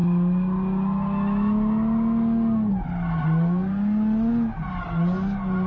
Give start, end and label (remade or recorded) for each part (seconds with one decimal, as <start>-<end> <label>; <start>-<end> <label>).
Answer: 0.0-5.7 recorded